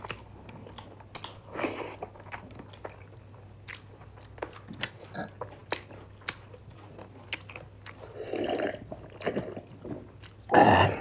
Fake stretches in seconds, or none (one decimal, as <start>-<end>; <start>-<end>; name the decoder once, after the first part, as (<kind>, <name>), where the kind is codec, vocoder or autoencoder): none